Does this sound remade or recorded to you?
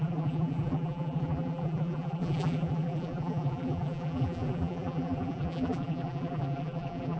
remade